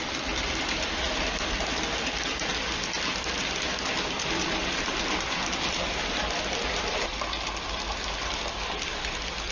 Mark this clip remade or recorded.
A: recorded